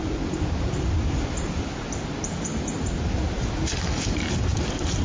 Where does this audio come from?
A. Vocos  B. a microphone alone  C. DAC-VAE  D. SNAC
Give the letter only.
B